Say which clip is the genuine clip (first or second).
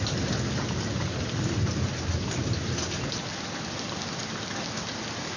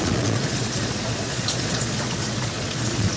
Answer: first